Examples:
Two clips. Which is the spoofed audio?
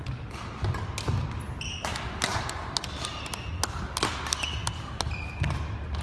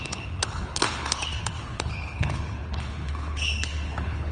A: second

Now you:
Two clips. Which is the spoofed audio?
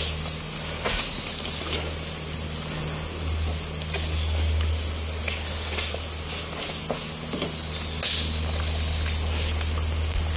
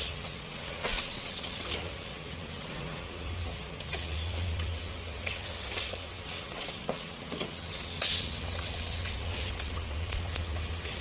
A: second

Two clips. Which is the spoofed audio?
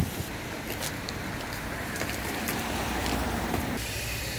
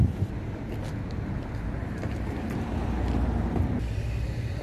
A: first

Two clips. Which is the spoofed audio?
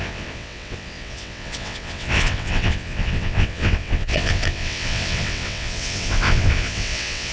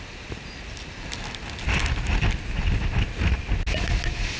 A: first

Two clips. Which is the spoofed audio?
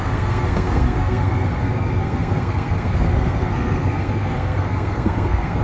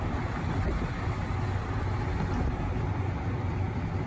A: first